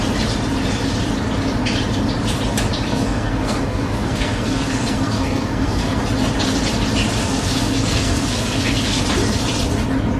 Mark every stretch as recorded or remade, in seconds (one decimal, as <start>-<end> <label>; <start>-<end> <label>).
0.0-2.9 recorded; 2.9-6.0 remade; 6.0-7.2 recorded; 7.2-9.0 remade; 9.0-10.2 recorded